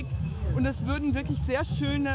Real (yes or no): no